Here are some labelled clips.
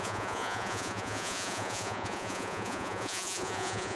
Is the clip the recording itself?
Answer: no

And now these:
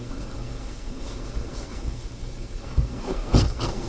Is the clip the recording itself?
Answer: no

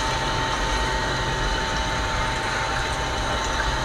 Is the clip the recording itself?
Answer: yes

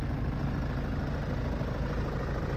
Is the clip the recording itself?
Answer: yes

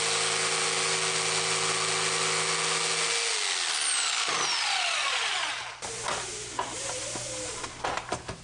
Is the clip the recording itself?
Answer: yes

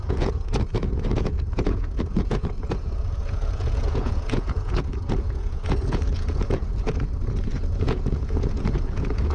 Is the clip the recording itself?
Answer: no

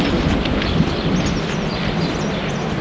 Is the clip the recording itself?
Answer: yes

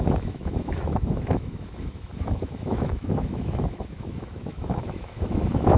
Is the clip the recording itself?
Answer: no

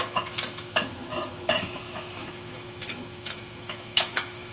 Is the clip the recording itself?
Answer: no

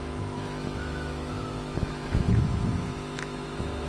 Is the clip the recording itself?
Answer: no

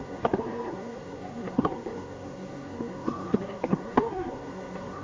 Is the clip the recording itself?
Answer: no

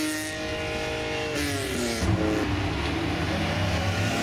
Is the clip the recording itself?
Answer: yes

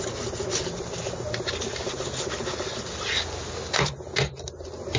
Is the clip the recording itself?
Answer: yes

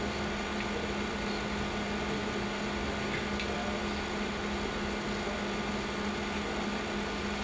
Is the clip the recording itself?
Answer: yes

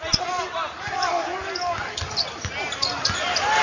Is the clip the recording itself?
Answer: yes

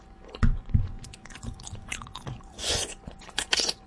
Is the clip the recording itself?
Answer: no